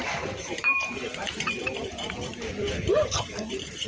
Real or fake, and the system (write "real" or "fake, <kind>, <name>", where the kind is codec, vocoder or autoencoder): fake, vocoder, BigVGAN v2